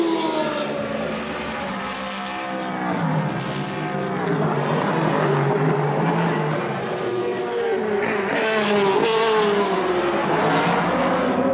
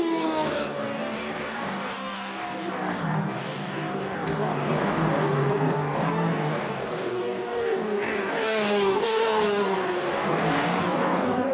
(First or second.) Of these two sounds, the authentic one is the first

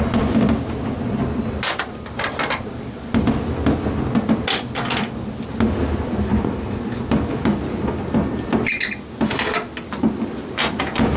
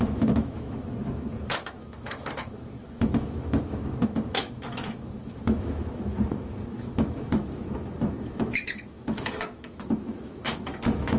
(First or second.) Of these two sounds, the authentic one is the first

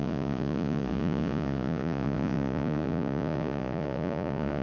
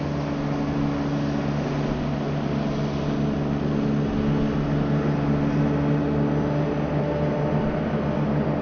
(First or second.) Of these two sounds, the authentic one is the second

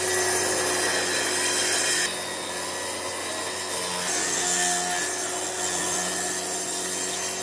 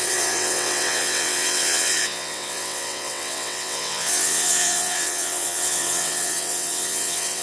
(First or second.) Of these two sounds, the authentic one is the first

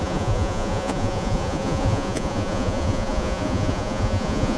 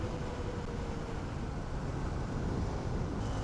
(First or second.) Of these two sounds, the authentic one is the second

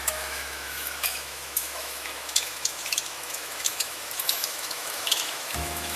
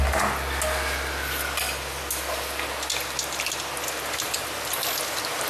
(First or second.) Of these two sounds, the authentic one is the second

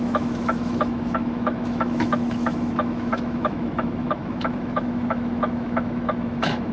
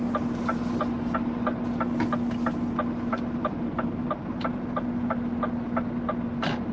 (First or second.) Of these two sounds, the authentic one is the second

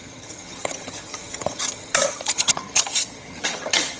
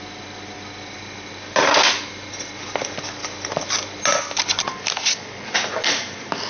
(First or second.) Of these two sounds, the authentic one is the second